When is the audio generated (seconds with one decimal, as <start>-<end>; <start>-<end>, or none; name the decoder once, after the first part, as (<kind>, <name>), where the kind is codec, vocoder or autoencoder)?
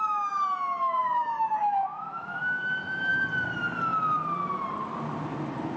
0.0-3.1 (autoencoder, DAC-VAE)